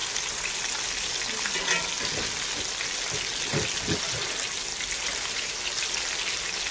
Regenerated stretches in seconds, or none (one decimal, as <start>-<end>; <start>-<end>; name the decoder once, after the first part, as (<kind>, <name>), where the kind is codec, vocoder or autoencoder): 4.7-5.6 (vocoder, BigVGAN v2)